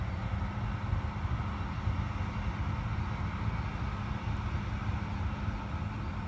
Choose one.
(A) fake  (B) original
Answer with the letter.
B